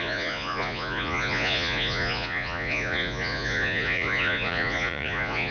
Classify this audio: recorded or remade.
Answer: remade